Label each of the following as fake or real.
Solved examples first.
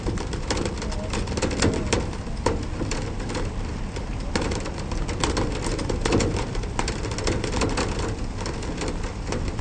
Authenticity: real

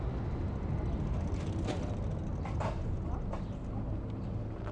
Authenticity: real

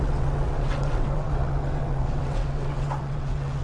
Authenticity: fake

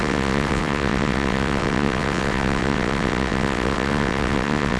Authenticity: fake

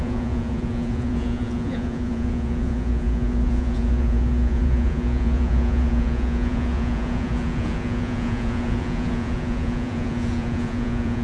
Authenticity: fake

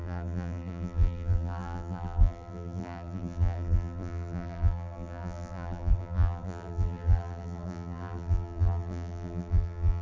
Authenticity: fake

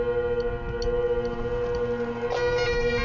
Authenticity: real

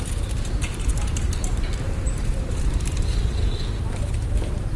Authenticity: fake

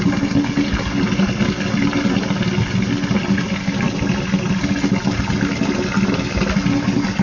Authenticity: real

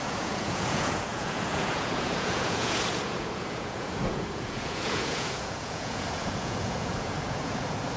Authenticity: fake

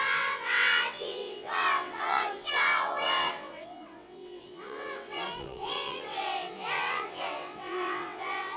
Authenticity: fake